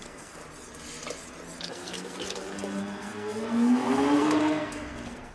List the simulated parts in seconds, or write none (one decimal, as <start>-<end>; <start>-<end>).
0.0-0.4; 1.6-5.3